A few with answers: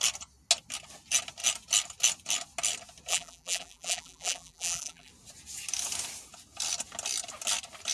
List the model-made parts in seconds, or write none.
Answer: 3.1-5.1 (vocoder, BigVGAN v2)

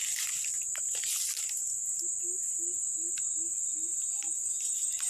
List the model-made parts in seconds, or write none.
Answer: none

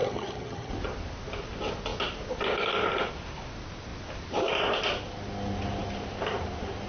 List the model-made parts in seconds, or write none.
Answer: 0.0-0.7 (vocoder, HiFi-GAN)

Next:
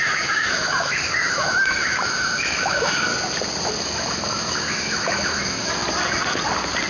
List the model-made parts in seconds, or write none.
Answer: 0.0-3.1 (autoencoder, DAC-VAE); 3.8-5.8